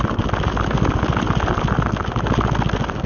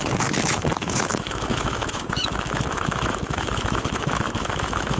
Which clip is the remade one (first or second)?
second